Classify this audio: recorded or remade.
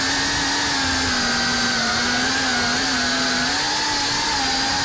recorded